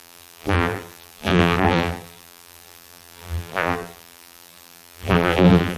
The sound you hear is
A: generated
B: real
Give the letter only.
A